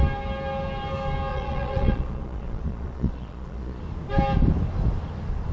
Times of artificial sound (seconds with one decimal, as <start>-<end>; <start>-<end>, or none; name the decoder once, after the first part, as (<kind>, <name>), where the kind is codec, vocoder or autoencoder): 1.3-3.8 (vocoder, Vocos)